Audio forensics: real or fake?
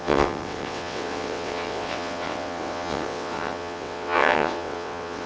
fake